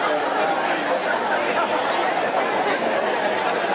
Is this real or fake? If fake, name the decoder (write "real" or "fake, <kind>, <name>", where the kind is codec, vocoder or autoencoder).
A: real